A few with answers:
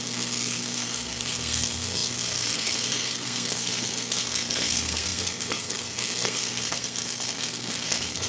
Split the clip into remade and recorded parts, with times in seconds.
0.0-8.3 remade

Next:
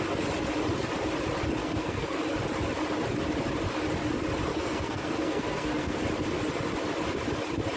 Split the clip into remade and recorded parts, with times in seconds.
0.0-1.6 recorded; 1.6-2.2 remade; 2.2-4.5 recorded; 4.5-6.0 remade; 6.0-7.8 recorded